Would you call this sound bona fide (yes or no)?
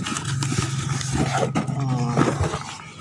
yes